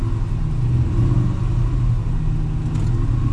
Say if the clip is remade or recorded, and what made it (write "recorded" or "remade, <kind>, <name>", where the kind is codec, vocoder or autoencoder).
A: recorded